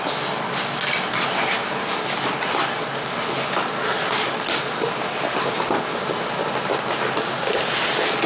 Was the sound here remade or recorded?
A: recorded